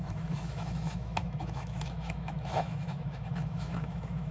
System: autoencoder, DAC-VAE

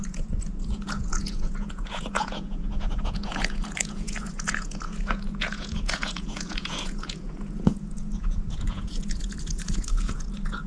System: vocoder, Vocos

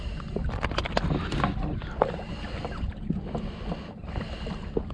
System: none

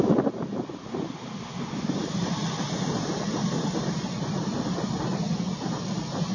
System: none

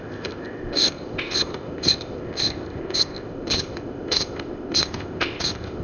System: codec, ZipCodec